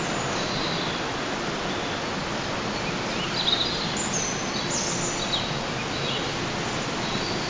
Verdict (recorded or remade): recorded